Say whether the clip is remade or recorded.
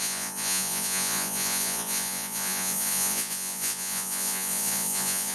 remade